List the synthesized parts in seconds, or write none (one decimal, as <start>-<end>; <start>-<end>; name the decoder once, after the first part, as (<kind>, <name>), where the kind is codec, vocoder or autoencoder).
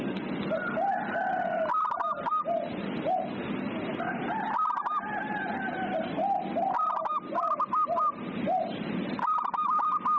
none